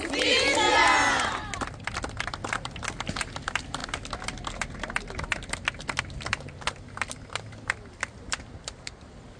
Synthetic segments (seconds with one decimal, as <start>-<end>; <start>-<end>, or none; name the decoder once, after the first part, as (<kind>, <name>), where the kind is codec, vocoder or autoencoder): none